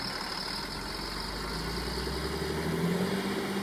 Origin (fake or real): real